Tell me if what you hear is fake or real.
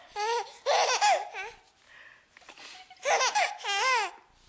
real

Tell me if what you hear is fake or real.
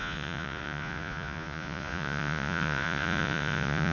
fake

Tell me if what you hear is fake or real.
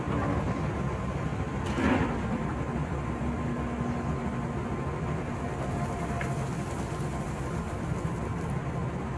real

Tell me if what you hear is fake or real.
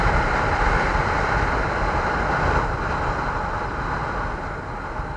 real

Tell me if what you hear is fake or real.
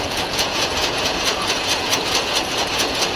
fake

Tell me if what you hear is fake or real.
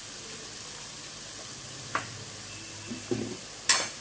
real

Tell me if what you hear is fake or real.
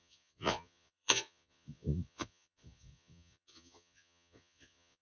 fake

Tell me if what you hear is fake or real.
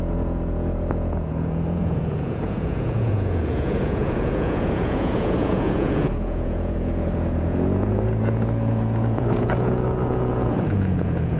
fake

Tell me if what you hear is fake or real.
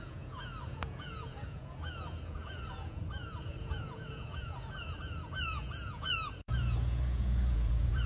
fake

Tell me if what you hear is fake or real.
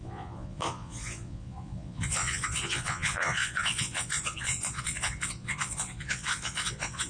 fake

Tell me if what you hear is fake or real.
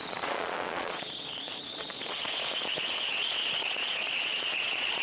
fake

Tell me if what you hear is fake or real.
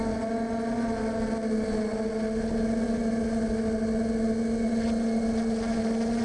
real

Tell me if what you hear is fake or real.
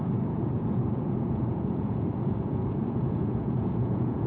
fake